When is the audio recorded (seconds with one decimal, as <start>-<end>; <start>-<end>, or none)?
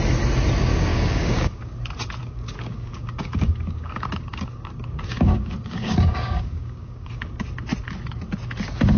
0.0-0.7; 1.6-2.2; 7.2-9.0